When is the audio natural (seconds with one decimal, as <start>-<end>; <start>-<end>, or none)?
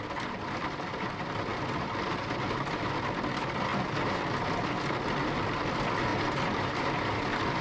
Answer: 0.0-3.7; 4.2-6.1; 6.9-7.6